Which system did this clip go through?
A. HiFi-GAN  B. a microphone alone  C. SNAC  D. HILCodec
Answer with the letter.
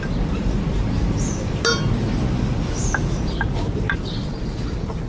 B